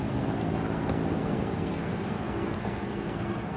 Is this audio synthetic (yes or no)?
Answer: yes